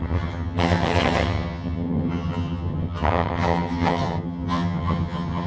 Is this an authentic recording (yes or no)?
no